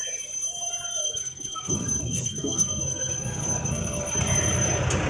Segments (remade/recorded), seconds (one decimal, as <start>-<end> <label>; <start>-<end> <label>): 0.0-1.0 recorded; 1.0-4.1 remade; 4.1-5.1 recorded